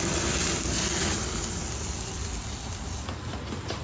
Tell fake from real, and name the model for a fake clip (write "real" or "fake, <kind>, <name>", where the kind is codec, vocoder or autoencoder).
real